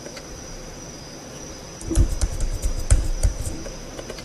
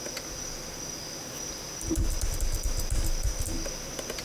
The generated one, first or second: first